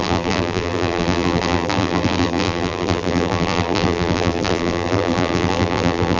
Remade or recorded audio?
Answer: remade